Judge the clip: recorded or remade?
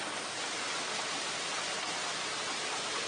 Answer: recorded